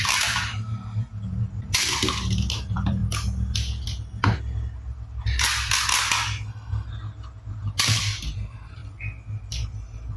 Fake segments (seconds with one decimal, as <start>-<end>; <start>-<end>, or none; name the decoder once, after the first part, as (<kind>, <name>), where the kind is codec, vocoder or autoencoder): 0.0-3.0 (vocoder, BigVGAN v2); 7.5-8.8; 9.4-10.2